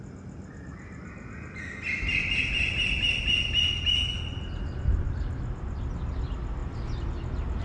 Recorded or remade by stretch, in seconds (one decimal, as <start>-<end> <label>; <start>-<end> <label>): 0.0-7.6 recorded